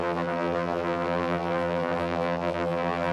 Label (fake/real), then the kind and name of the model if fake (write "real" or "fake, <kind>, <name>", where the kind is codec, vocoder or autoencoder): fake, vocoder, BigVGAN v2